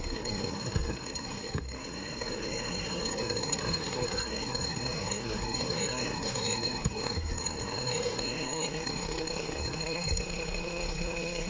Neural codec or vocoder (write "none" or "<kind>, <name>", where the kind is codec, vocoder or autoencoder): codec, SNAC